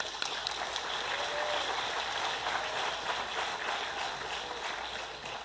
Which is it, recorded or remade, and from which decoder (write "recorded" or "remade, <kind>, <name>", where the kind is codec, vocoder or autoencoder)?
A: recorded